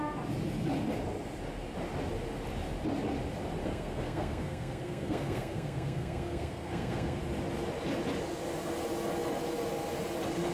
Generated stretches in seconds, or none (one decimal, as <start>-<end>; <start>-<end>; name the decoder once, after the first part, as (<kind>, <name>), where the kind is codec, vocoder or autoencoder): 3.6-7.2 (codec, SNAC)